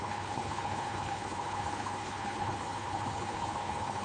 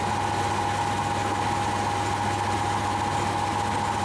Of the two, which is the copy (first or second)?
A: first